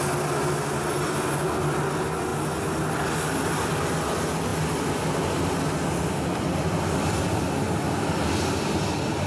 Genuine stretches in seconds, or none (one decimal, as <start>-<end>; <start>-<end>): 0.0-9.3

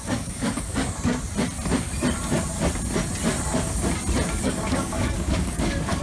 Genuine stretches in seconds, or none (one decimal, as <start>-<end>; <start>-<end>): 0.8-4.4